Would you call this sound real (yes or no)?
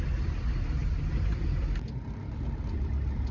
yes